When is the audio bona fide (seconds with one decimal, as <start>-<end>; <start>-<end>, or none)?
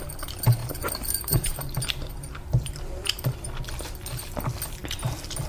0.0-0.6; 3.5-5.5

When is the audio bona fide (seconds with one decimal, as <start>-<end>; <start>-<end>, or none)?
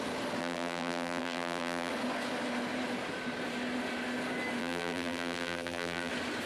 0.0-0.4; 1.9-4.6; 6.1-6.5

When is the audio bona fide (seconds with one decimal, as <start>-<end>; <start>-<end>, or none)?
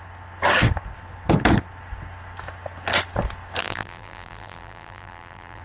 0.0-3.6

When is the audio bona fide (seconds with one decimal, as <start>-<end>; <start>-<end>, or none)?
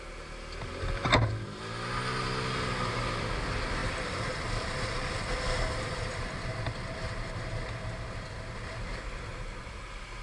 0.0-3.8; 8.5-10.2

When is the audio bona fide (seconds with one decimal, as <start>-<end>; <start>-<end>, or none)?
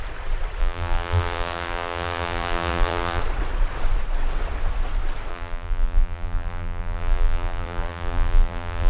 0.0-0.6; 3.2-5.3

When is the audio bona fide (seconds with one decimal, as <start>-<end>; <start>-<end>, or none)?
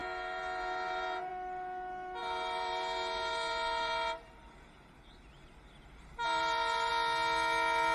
1.3-2.2; 6.9-7.9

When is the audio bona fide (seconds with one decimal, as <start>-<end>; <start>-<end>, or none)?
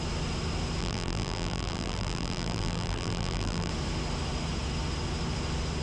0.0-0.8; 3.7-5.8